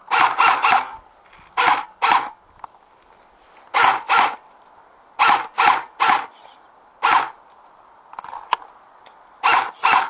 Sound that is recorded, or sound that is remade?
recorded